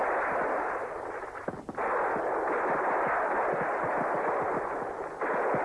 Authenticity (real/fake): real